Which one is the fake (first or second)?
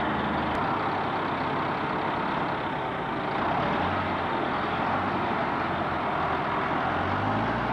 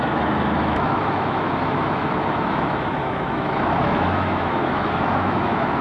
second